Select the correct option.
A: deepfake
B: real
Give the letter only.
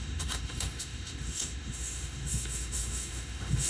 A